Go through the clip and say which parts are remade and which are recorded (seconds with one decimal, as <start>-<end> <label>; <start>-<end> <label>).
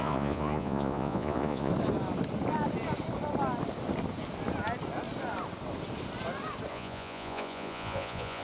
0.0-1.7 remade; 1.7-6.7 recorded; 6.7-8.4 remade